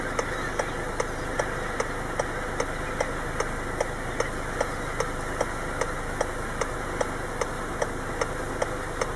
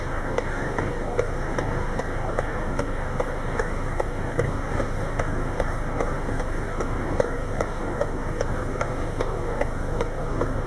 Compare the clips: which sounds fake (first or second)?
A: second